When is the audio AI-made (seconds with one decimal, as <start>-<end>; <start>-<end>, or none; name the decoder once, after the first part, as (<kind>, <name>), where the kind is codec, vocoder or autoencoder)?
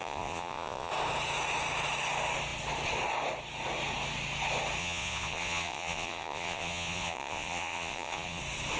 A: 0.0-0.9 (vocoder, Vocos); 4.8-8.4